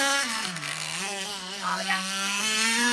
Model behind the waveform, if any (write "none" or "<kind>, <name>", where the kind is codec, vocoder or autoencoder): codec, SNAC